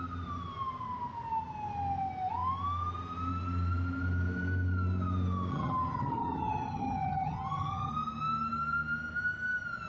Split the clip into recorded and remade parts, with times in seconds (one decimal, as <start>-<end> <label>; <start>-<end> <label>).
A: 0.0-5.5 recorded; 5.5-7.9 remade; 7.9-9.9 recorded